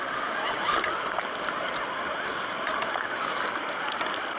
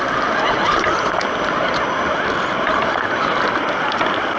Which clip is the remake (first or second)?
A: second